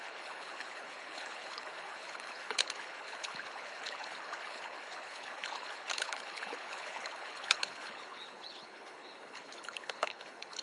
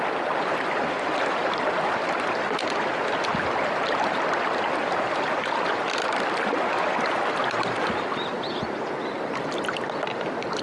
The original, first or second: second